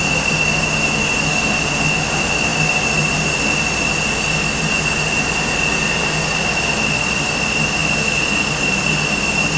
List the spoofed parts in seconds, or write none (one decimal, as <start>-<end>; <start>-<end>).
none